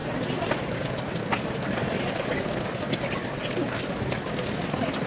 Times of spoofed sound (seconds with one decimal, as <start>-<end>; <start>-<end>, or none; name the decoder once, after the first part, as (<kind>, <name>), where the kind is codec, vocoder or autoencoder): none